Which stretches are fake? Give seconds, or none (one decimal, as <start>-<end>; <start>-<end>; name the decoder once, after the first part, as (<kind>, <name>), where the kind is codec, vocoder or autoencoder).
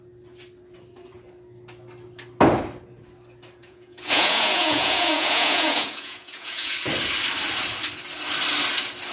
3.6-6.7 (vocoder, Vocos)